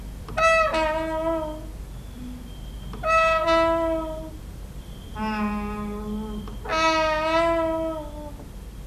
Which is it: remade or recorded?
recorded